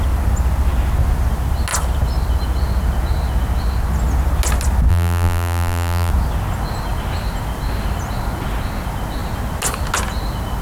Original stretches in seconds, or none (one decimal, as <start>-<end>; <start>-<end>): 0.0-4.9; 6.1-10.6